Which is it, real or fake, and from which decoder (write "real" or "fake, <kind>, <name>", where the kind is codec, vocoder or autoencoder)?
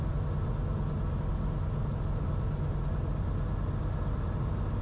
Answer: real